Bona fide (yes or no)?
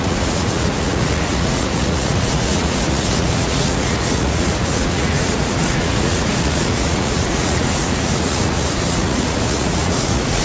no